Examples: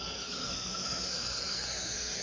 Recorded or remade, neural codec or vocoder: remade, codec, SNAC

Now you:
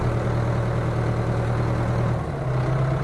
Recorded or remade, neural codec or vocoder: recorded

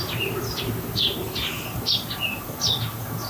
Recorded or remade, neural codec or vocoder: recorded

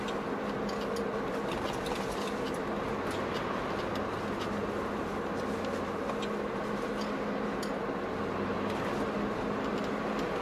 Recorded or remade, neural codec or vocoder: recorded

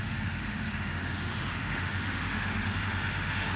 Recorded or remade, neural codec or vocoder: remade, autoencoder, DAC-VAE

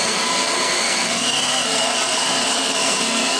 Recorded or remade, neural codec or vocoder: remade, codec, SNAC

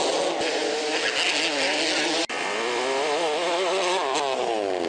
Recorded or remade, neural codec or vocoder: recorded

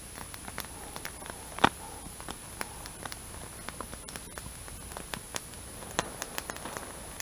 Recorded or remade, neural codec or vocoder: recorded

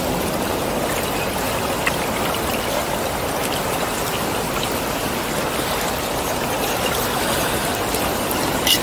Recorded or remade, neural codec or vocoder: recorded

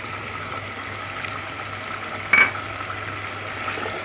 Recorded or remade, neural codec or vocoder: recorded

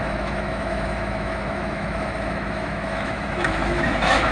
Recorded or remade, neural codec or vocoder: remade, autoencoder, DAC-VAE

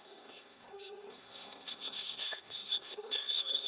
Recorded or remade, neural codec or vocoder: remade, codec, SNAC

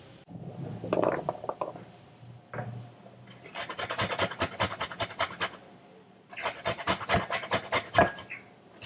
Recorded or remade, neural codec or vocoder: recorded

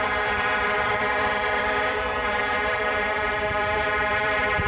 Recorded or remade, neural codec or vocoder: remade, vocoder, BigVGAN v2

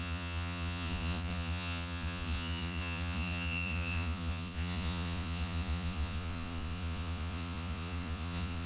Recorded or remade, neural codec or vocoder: remade, vocoder, Vocos